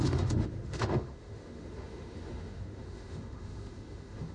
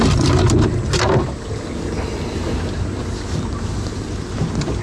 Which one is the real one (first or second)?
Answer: second